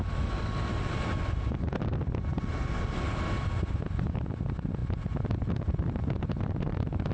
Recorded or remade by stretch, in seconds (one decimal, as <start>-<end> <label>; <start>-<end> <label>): 0.0-7.1 recorded